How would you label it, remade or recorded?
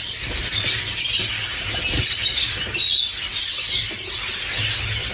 remade